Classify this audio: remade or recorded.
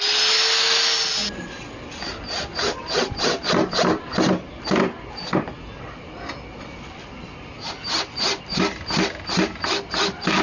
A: recorded